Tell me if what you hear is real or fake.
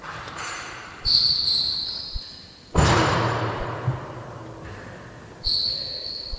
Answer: fake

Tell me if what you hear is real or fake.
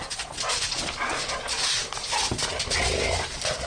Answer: real